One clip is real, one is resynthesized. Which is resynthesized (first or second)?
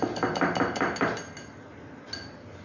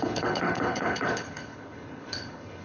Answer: second